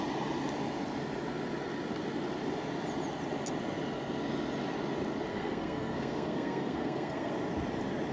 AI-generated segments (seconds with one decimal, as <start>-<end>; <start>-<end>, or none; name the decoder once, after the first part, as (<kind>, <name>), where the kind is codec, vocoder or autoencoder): 5.3-7.3 (codec, SNAC)